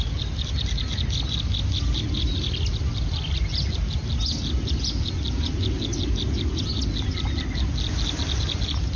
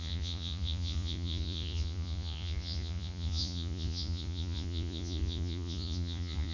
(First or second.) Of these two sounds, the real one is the first